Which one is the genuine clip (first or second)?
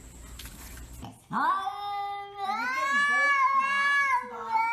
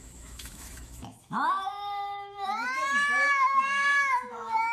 first